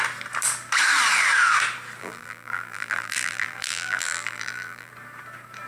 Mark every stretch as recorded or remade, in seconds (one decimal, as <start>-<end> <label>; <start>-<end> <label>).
0.0-2.0 recorded; 2.0-4.9 remade; 4.9-5.7 recorded